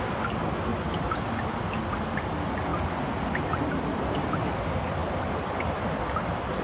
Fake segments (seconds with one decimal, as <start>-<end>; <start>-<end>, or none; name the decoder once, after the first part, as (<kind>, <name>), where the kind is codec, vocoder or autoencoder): none